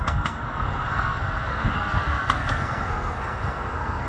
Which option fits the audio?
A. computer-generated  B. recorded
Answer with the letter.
A